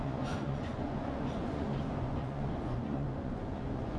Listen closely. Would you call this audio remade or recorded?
remade